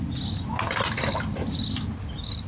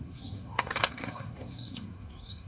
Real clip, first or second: first